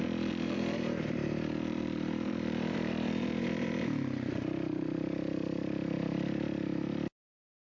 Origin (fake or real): fake